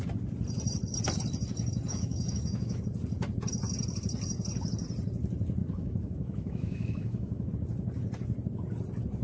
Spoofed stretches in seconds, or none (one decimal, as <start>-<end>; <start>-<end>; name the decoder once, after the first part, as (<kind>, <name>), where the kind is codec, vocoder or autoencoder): 1.9-2.8 (autoencoder, DAC-VAE); 5.6-7.5